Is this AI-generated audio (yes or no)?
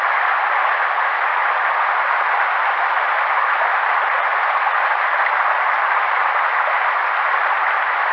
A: no